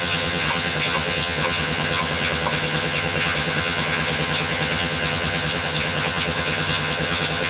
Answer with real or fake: fake